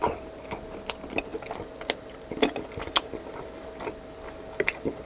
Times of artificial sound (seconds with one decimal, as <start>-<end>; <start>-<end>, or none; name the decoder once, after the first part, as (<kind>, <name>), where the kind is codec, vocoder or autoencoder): none